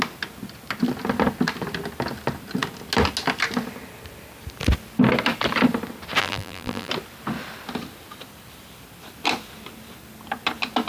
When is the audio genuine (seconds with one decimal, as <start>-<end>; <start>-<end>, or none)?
0.0-6.2; 6.9-10.9